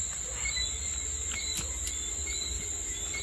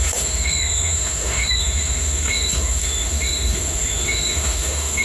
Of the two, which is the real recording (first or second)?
first